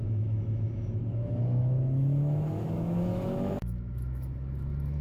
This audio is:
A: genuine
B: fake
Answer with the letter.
B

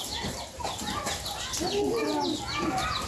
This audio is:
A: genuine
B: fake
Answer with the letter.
A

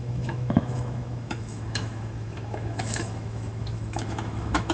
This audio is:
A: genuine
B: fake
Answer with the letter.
B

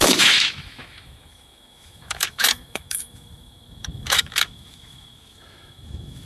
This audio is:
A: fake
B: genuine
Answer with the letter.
A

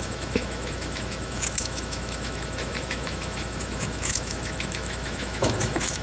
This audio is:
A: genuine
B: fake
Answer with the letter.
B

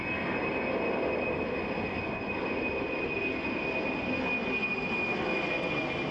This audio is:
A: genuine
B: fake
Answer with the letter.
A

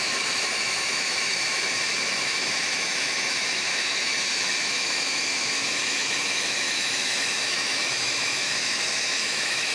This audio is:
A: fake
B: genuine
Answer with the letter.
A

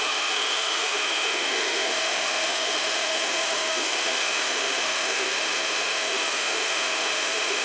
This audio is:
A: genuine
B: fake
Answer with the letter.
B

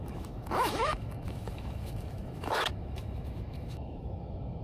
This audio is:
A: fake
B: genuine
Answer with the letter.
A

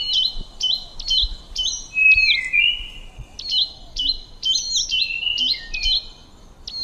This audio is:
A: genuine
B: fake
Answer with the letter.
A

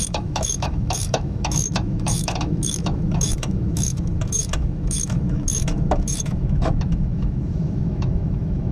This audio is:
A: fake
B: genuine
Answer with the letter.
A